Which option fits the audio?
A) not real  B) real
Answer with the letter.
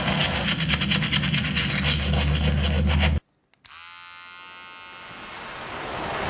B